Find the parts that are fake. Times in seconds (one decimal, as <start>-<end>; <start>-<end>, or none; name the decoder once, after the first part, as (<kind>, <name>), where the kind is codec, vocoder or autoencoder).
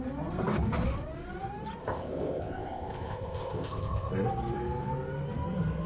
1.8-4.1 (codec, ZipCodec)